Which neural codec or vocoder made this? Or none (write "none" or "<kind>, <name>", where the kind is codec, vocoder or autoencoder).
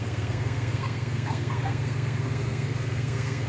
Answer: codec, SNAC